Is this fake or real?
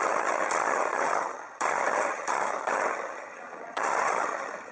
fake